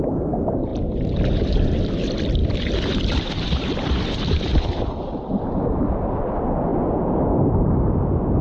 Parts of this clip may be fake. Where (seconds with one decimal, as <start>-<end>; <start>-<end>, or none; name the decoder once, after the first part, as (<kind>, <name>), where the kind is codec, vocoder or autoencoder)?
0.7-1.9 (vocoder, BigVGAN v2); 2.4-6.3

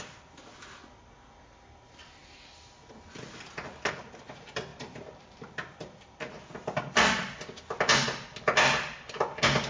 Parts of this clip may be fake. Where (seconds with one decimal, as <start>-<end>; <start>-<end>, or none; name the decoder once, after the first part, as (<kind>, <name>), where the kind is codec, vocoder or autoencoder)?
4.7-6.8 (vocoder, BigVGAN v2)

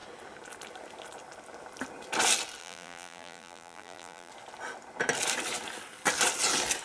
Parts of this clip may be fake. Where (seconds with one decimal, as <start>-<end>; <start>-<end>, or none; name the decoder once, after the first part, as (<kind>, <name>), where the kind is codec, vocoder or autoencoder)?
2.6-4.3 (vocoder, BigVGAN v2)

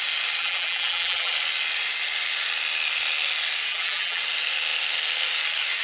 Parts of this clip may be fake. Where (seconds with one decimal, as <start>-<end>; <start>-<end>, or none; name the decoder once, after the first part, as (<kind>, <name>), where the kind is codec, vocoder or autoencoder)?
0.4-1.3 (vocoder, BigVGAN v2); 3.7-4.2